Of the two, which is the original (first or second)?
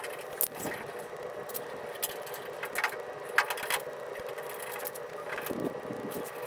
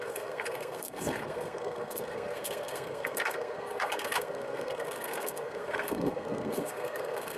first